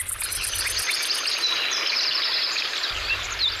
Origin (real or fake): real